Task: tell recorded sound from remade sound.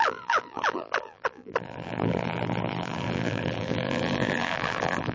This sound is remade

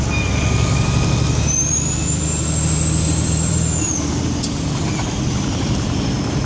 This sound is remade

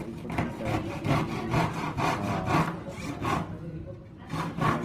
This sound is recorded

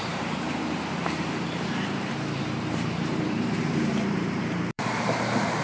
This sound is remade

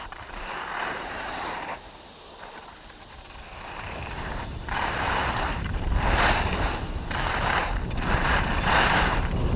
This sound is remade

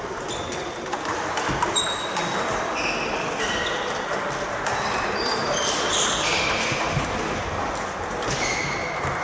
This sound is recorded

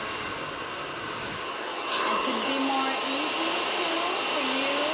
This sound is recorded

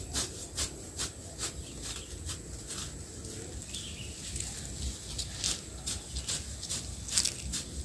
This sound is recorded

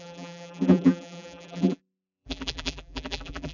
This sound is remade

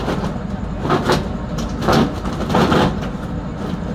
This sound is recorded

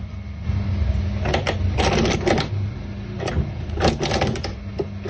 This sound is recorded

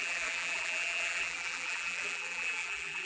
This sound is remade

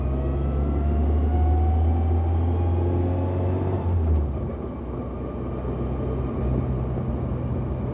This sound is recorded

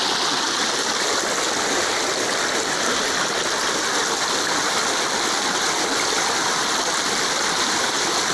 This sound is recorded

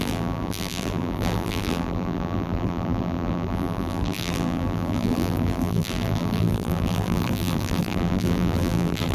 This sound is remade